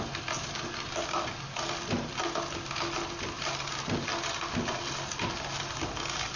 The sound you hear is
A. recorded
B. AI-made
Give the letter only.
A